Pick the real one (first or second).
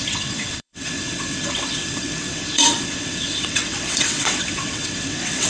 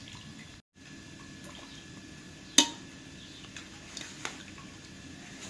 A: second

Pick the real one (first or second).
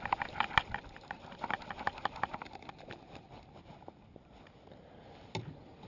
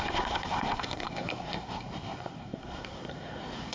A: first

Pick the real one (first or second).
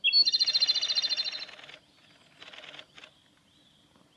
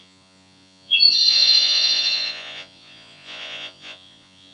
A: first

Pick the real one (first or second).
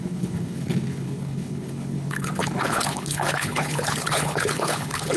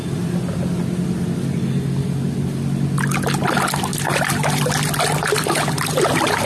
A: second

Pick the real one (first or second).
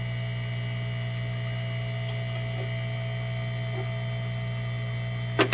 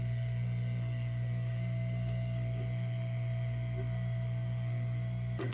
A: first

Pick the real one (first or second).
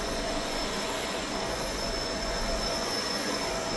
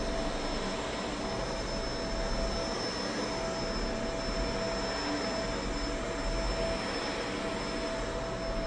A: second